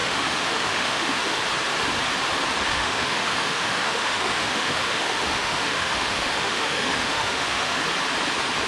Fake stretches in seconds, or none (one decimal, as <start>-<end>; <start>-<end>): 0.0-1.4; 2.7-7.8